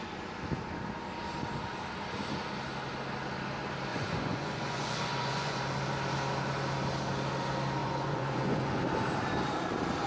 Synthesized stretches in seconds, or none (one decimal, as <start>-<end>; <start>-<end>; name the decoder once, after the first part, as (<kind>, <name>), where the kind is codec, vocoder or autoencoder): 3.9-5.6 (vocoder, Vocos); 7.8-8.8